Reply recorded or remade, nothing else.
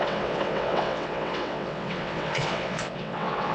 remade